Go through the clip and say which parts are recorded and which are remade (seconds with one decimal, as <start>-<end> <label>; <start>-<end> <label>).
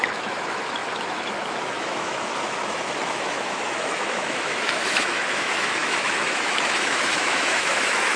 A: 0.0-8.2 remade